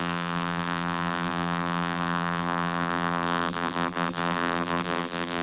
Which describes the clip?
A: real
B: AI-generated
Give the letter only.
B